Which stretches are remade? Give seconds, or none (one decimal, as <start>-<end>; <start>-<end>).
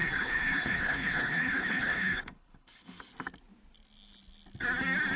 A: 0.0-3.1